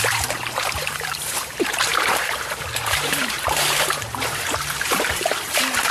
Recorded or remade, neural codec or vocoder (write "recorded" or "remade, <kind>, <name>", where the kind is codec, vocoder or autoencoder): remade, vocoder, BigVGAN v2